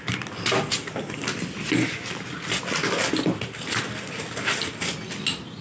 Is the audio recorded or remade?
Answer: recorded